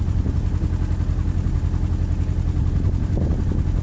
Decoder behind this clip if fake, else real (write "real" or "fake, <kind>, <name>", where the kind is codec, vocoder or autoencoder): real